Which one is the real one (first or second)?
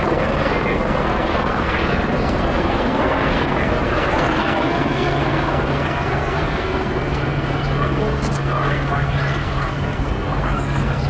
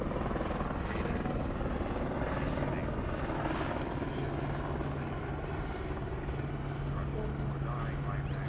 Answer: second